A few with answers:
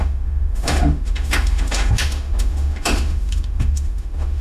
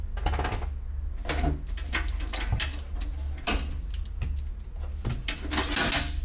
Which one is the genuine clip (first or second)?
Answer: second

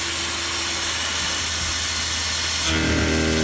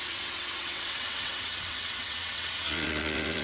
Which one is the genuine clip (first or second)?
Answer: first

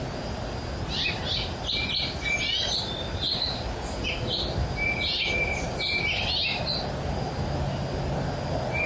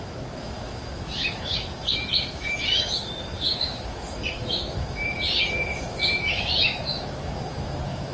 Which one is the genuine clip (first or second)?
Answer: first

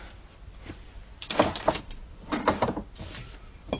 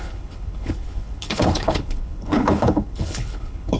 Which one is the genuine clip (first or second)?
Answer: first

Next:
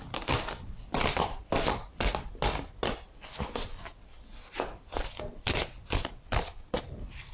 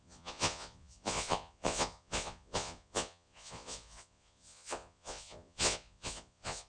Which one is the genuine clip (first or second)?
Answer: first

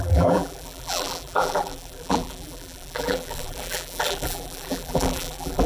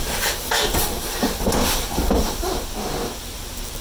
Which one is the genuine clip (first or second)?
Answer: second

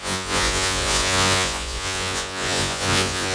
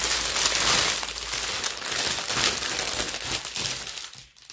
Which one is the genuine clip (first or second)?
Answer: second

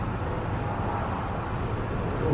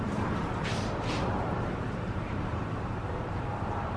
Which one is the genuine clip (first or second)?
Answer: first